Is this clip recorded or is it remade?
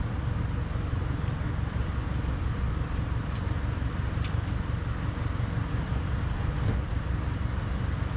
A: recorded